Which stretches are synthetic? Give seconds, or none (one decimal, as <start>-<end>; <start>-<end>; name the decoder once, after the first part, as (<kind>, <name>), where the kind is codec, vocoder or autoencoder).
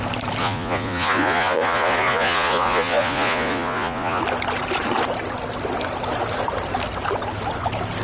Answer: 0.4-4.2 (vocoder, Vocos)